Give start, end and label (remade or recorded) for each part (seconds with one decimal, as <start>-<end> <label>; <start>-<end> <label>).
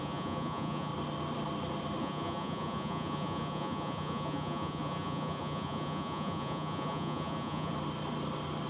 0.0-0.9 remade; 0.9-2.0 recorded; 2.0-7.7 remade; 7.7-8.7 recorded